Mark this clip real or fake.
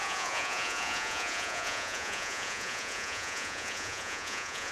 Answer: fake